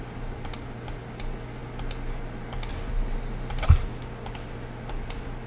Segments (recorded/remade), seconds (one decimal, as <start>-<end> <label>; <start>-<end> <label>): 0.0-5.5 recorded

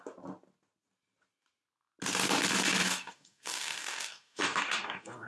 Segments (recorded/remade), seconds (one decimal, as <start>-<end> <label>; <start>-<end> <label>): 0.0-2.8 recorded; 2.8-5.3 remade

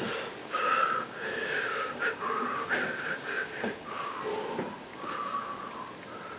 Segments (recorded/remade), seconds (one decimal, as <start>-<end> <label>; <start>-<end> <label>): 0.0-0.4 recorded; 0.4-4.2 remade; 4.2-4.9 recorded; 4.9-5.6 remade; 5.6-6.4 recorded